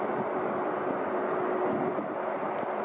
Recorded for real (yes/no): yes